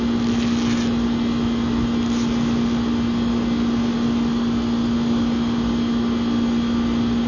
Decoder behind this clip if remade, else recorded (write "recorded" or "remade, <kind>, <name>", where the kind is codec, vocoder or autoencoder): recorded